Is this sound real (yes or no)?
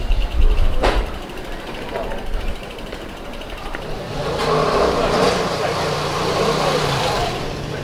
no